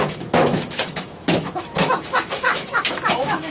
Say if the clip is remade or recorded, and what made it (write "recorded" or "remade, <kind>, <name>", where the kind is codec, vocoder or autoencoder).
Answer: remade, autoencoder, DAC-VAE